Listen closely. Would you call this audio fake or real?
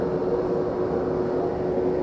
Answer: real